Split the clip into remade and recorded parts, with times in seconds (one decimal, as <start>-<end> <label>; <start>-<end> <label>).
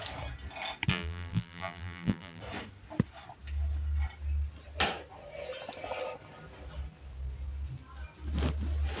0.0-0.9 recorded; 0.9-2.4 remade; 2.4-9.0 recorded